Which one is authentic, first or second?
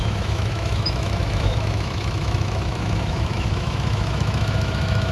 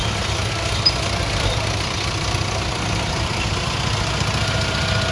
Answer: second